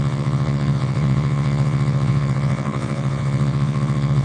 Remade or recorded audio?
remade